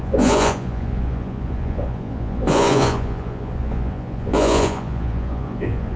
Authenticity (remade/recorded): remade